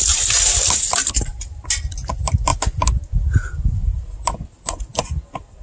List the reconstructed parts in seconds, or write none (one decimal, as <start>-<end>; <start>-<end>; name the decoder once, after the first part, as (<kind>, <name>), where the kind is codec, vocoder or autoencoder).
none